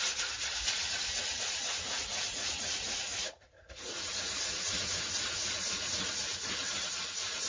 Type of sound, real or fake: fake